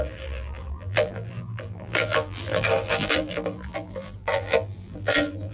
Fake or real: fake